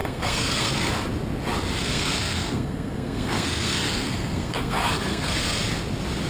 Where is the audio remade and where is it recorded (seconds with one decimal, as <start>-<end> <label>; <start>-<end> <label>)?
0.0-0.9 remade; 0.9-1.8 recorded; 1.8-5.6 remade; 5.6-6.3 recorded